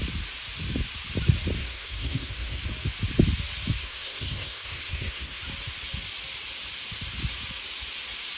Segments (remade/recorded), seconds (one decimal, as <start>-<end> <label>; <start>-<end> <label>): 0.0-1.6 recorded; 1.6-2.6 remade; 2.6-3.8 recorded; 3.8-5.4 remade; 5.4-8.4 recorded